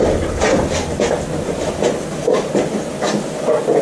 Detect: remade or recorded recorded